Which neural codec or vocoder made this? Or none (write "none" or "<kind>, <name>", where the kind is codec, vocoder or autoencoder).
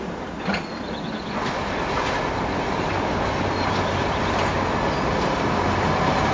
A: none